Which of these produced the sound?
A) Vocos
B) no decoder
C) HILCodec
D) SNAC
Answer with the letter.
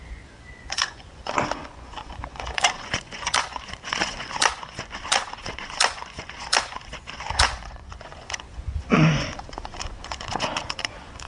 A